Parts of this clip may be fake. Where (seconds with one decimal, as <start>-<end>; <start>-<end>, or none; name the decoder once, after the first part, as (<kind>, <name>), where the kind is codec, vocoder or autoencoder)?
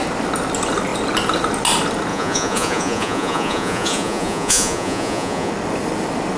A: 2.1-5.5 (vocoder, Vocos)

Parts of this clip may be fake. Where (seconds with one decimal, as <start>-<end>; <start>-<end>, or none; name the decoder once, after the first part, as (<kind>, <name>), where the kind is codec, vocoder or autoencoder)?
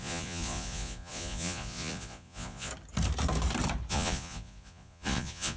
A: 0.0-2.7 (vocoder, Vocos); 3.9-5.6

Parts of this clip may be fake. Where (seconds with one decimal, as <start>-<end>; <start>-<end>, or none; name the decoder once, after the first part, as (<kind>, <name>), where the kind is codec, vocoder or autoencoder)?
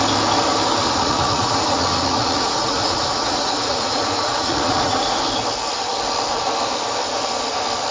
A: 0.8-5.2 (vocoder, Vocos)